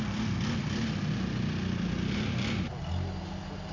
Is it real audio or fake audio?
real